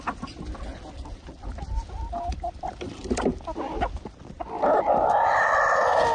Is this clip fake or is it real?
real